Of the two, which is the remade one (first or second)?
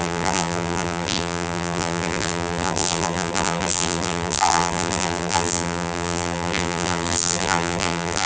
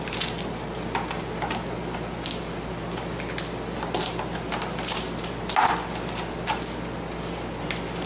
first